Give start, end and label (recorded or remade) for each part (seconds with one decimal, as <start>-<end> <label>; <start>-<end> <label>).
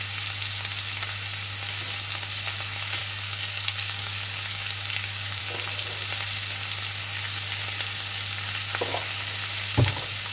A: 0.0-3.0 recorded; 3.0-5.4 remade; 5.4-10.3 recorded